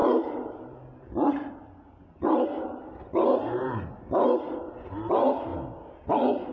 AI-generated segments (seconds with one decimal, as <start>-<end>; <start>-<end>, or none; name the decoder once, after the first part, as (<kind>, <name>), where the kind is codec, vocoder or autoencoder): 0.0-5.5 (vocoder, BigVGAN v2)